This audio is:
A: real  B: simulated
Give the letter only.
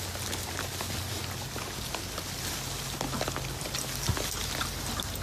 A